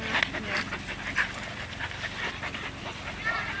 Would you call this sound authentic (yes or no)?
yes